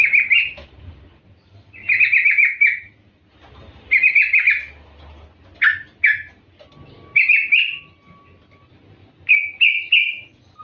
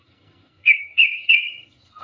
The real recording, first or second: first